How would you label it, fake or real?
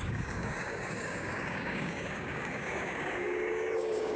fake